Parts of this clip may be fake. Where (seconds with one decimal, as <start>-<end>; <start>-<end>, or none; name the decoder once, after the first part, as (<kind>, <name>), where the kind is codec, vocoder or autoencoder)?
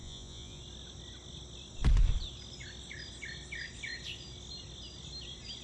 0.0-0.6 (vocoder, Vocos)